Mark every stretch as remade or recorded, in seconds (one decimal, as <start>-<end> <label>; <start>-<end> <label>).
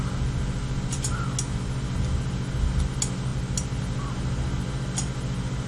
0.0-5.7 recorded